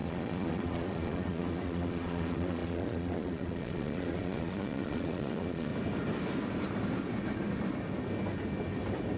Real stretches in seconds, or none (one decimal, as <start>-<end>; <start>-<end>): 5.7-9.2